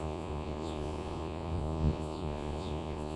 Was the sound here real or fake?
fake